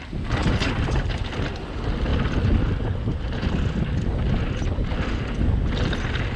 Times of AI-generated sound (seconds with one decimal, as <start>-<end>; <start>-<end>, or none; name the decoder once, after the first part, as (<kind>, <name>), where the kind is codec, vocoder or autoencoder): 0.4-1.2 (vocoder, BigVGAN v2)